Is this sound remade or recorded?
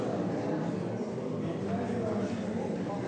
recorded